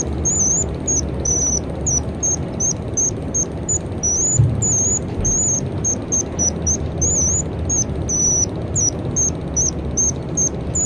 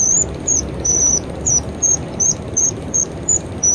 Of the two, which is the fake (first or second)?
second